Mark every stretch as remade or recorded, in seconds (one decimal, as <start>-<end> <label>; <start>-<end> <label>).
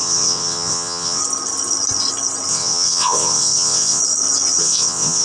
0.0-1.2 remade; 1.2-2.5 recorded; 2.5-4.0 remade; 4.0-4.6 recorded; 4.6-5.2 remade